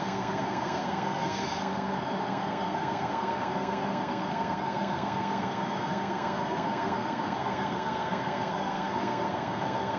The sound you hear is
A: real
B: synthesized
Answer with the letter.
B